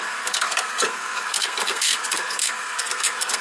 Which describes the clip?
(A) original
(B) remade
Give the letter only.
B